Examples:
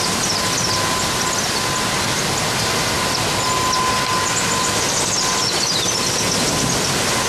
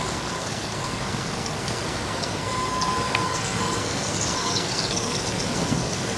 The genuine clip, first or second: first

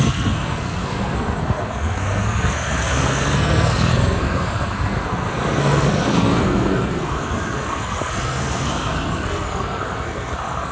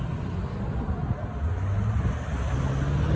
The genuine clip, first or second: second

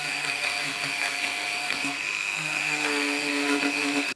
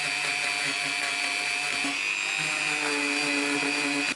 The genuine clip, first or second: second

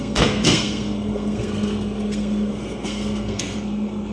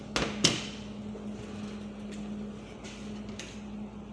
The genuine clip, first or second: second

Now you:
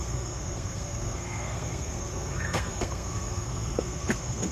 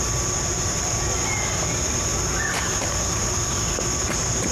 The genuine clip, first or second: second